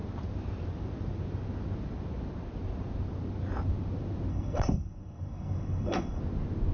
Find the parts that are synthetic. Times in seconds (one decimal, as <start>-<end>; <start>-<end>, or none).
4.3-6.2